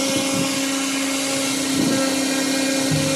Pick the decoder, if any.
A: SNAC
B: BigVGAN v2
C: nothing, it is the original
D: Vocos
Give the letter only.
C